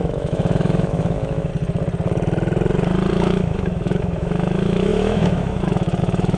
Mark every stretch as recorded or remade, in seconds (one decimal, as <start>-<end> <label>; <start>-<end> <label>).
0.0-1.5 remade; 1.5-3.1 recorded; 3.1-6.4 remade